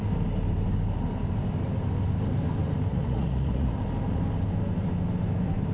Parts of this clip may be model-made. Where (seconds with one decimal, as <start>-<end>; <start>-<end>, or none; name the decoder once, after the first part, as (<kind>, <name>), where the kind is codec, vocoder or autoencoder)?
2.9-3.8 (vocoder, Vocos)